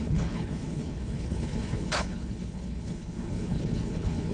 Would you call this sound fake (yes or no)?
yes